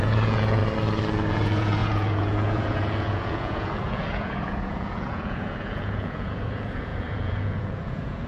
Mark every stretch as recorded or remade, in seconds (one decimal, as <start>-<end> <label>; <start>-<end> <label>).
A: 0.0-0.6 remade; 0.6-1.3 recorded; 1.3-8.3 remade